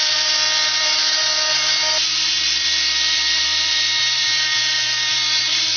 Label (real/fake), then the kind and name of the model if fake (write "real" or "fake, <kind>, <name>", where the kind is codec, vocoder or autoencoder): fake, vocoder, BigVGAN v2